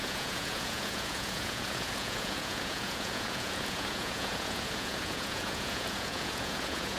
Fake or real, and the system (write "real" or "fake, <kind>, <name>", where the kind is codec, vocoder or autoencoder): fake, vocoder, Vocos